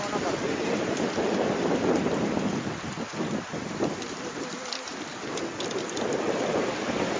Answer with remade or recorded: remade